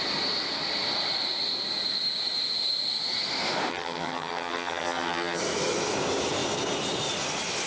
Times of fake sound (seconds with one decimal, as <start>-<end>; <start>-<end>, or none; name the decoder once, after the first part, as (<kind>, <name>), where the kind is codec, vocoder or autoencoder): 3.7-5.4 (vocoder, HiFi-GAN)